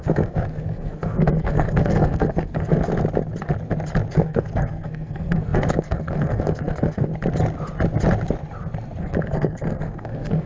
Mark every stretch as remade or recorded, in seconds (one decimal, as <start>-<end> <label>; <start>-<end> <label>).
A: 0.0-2.9 remade; 2.9-4.1 recorded; 4.1-7.1 remade; 7.1-9.0 recorded; 9.0-10.5 remade